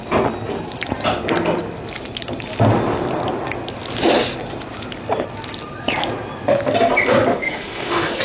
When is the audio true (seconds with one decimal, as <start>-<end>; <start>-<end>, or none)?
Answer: 0.0-7.3